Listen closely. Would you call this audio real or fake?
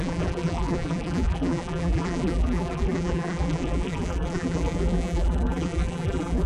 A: fake